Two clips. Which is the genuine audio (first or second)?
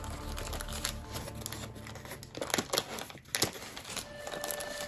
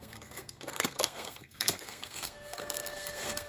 first